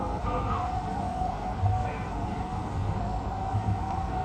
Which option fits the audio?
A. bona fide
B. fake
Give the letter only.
B